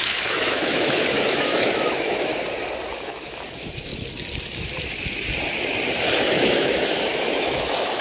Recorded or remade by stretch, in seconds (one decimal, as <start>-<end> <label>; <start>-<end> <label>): 0.0-2.3 remade; 2.3-2.9 recorded; 2.9-3.9 remade; 3.9-6.2 recorded; 6.2-8.0 remade